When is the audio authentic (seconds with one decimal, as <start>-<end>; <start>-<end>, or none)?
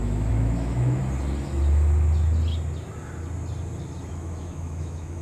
1.0-4.1